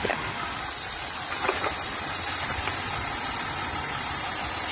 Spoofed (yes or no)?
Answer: no